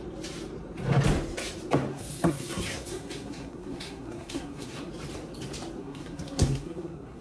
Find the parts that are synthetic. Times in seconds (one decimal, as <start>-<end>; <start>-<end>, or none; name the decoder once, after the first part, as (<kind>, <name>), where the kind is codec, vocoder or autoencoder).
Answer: 1.9-4.9 (codec, SNAC); 5.8-7.2